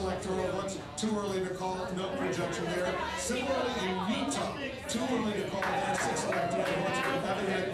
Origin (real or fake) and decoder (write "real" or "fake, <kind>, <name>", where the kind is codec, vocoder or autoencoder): fake, vocoder, Vocos